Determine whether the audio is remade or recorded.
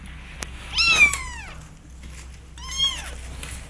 recorded